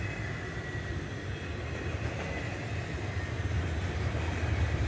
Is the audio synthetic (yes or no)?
no